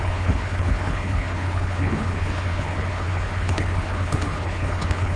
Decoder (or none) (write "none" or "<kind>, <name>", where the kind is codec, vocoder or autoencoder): codec, HILCodec